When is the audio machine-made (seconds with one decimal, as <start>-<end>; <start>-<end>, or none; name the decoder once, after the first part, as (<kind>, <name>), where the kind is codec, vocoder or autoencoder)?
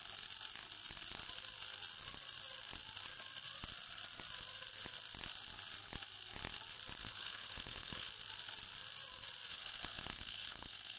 7.0-8.1 (codec, HILCodec); 9.5-11.0